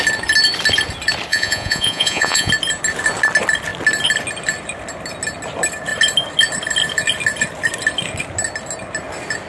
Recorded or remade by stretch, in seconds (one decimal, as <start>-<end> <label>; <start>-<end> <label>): 0.0-1.3 recorded; 1.3-2.5 remade; 2.5-9.5 recorded